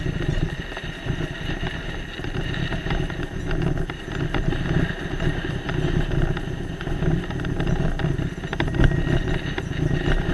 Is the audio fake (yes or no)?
no